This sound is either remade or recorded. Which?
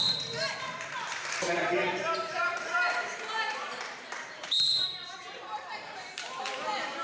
remade